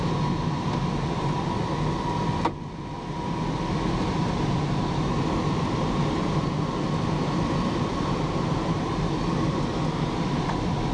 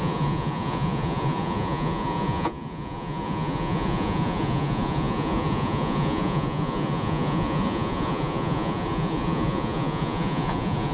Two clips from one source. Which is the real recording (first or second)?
first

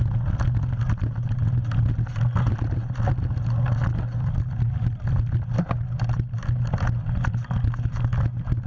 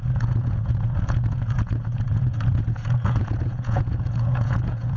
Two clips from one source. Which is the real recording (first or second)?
first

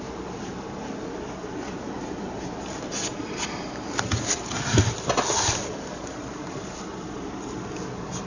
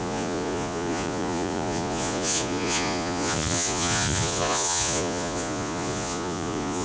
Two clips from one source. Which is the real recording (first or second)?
first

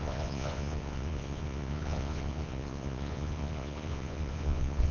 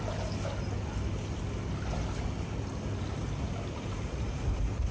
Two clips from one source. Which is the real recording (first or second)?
second